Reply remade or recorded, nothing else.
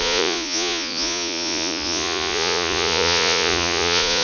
remade